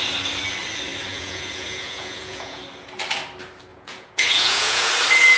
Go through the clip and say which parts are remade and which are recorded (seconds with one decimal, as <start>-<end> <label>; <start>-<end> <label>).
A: 0.0-1.1 recorded; 1.1-2.6 remade; 2.6-3.7 recorded; 3.7-4.9 remade; 4.9-5.4 recorded